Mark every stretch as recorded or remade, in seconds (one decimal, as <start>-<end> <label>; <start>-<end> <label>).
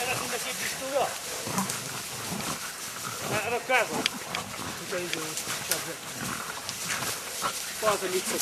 0.0-0.4 recorded; 0.4-1.3 remade; 1.3-8.4 recorded